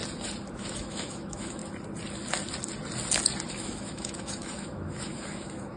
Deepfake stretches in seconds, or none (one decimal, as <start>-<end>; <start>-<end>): 0.5-1.6; 3.5-5.8